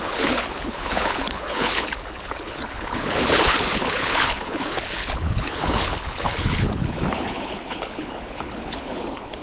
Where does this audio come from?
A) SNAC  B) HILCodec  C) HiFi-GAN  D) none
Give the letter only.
B